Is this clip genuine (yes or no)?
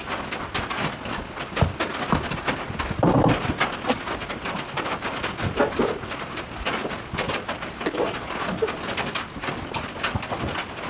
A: yes